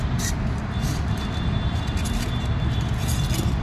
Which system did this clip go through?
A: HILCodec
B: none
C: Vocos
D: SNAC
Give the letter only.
B